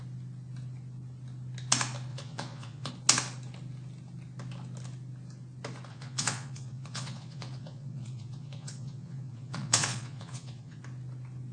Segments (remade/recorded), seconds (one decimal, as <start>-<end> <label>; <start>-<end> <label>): 0.0-2.1 recorded; 2.1-2.9 remade; 2.9-5.9 recorded; 5.9-10.8 remade; 10.8-11.5 recorded